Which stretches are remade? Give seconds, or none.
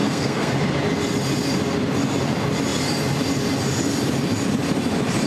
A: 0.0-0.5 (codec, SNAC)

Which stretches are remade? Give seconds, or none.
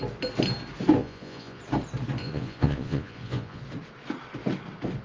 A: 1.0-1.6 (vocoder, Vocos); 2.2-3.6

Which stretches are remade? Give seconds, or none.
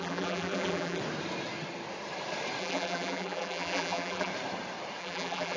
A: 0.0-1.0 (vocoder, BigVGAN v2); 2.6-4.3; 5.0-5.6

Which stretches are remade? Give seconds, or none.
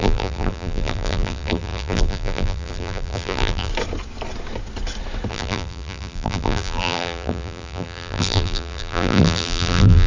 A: 0.0-3.7 (vocoder, BigVGAN v2); 5.3-10.1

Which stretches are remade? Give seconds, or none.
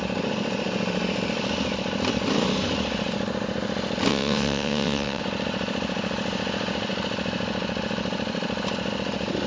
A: 4.1-5.2 (vocoder, WaveNeXt)